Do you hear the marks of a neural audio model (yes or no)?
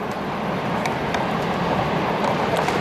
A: yes